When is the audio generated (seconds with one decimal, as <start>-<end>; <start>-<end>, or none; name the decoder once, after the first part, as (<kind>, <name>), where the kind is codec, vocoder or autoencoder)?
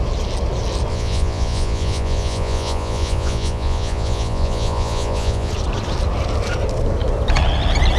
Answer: 0.9-5.5 (vocoder, Vocos)